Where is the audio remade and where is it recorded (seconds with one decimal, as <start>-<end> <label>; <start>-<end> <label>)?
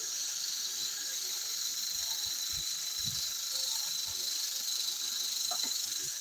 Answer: 0.0-1.8 remade; 1.8-5.5 recorded; 5.5-6.2 remade